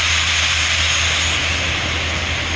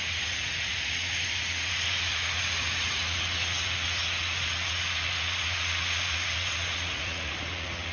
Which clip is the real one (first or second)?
first